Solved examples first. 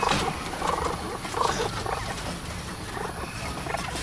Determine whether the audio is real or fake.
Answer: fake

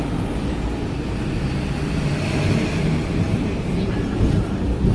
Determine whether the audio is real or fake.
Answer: real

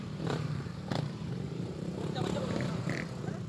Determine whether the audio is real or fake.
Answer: fake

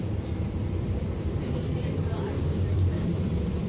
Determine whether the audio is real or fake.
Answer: fake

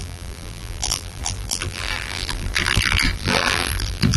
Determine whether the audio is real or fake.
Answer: fake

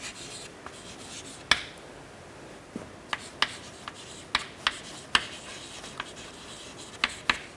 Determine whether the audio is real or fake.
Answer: real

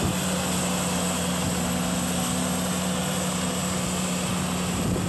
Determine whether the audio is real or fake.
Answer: real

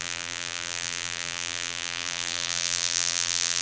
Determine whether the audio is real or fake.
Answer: fake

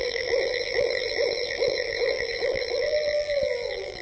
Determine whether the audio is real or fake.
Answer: fake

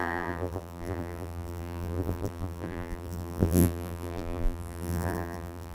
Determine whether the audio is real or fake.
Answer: fake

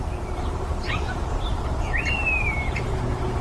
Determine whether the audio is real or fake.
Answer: fake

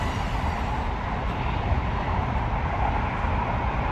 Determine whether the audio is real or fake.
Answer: real